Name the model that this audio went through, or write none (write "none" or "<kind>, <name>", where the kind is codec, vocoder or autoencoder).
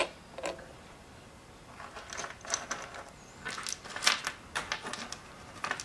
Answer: none